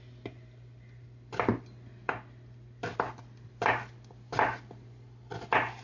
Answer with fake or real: real